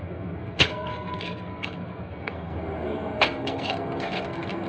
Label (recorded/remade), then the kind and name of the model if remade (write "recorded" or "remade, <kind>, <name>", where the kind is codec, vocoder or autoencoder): remade, codec, SNAC